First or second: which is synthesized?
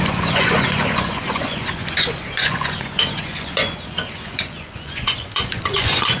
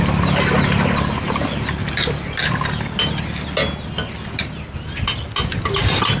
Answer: first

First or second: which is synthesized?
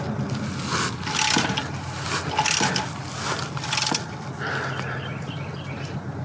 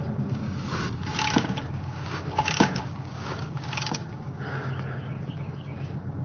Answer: second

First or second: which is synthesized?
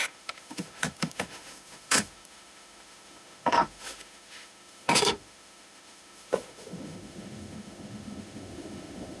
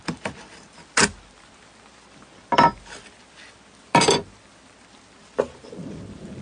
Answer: first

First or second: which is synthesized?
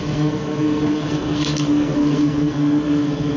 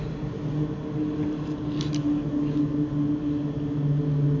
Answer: first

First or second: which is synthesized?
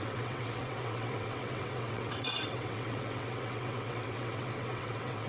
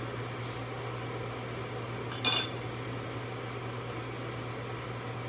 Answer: first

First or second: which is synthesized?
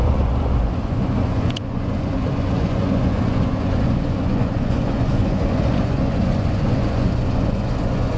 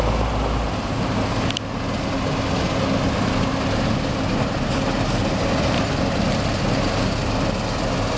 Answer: first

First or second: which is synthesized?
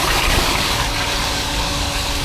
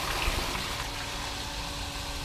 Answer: first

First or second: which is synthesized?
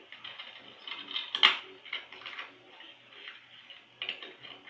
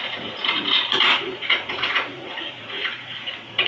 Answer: second